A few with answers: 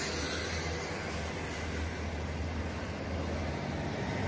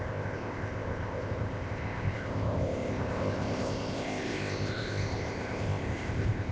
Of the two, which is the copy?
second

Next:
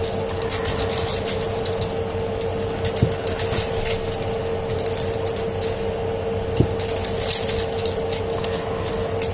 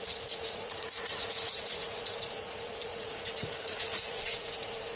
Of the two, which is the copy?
second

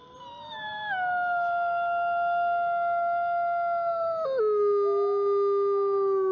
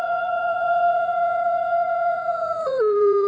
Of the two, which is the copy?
second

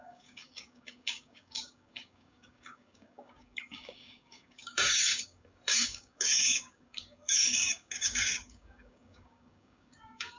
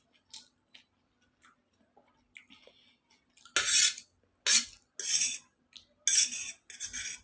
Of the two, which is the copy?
first